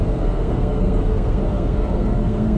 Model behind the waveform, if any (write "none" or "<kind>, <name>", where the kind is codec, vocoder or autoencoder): codec, SNAC